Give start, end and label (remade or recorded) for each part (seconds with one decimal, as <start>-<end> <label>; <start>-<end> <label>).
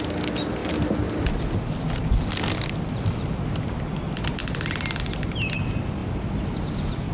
0.0-7.1 recorded